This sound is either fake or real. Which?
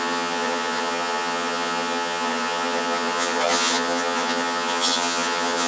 fake